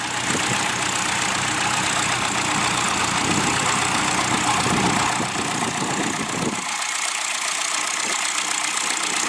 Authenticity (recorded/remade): recorded